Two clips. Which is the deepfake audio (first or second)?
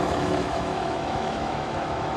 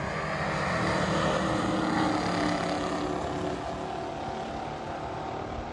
first